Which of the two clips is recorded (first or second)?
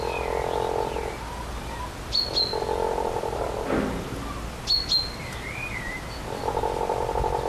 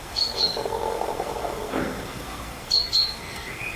first